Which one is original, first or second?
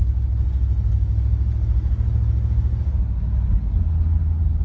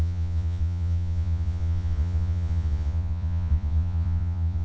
first